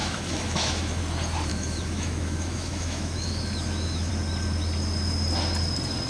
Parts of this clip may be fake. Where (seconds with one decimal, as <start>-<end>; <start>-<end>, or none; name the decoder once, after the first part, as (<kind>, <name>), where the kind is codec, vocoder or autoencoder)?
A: 0.0-1.0 (autoencoder, DAC-VAE); 1.5-4.1